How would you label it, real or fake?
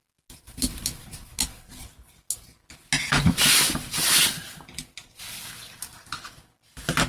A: real